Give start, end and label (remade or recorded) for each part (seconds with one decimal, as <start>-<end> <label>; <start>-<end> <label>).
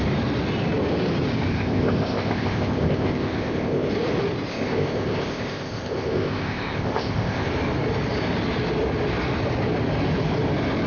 0.0-1.5 recorded; 1.5-3.9 remade; 3.9-4.5 recorded; 4.5-7.5 remade; 7.5-10.9 recorded